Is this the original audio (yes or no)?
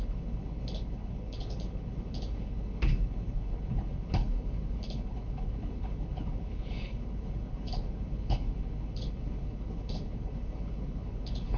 no